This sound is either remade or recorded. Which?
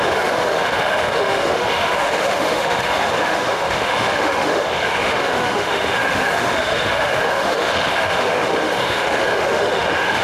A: remade